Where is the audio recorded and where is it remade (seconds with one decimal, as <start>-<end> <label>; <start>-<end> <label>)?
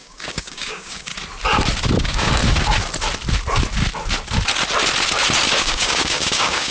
0.0-1.1 remade; 1.1-2.0 recorded; 2.0-2.4 remade; 2.4-5.6 recorded; 5.6-6.7 remade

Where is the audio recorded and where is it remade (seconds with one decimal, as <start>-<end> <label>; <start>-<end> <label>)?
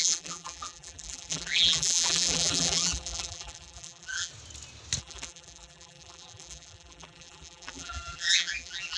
0.0-4.3 remade; 4.3-5.0 recorded; 5.0-9.0 remade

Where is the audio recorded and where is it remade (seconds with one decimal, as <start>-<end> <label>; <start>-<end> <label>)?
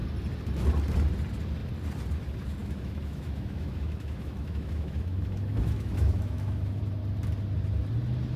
0.0-2.6 recorded; 2.6-6.8 remade; 6.8-8.4 recorded